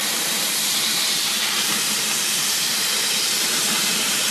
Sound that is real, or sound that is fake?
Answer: fake